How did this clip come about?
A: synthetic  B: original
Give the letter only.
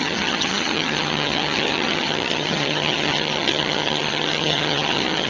A